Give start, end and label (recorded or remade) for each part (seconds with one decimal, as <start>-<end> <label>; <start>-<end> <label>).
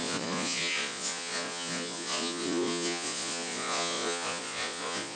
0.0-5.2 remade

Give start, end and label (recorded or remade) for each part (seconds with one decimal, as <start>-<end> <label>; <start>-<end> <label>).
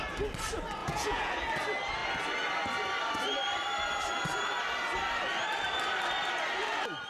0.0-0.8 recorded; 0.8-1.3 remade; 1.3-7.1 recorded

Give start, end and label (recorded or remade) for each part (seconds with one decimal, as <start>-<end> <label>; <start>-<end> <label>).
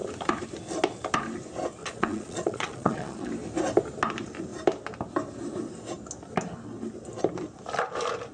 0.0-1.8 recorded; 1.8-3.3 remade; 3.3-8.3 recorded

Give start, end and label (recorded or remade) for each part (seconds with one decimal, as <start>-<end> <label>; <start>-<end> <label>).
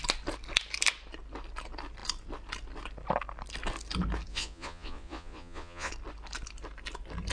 0.0-4.3 recorded; 4.3-5.9 remade; 5.9-7.3 recorded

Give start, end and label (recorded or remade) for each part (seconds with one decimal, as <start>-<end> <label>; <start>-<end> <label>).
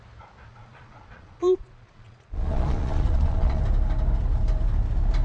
0.0-0.5 recorded; 0.5-3.6 remade; 3.6-5.2 recorded